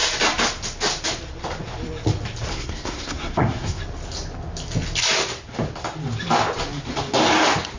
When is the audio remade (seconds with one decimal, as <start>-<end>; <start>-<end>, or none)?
2.5-3.8